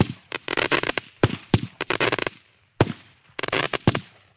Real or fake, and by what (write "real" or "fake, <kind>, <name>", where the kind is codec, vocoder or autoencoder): fake, vocoder, BigVGAN v2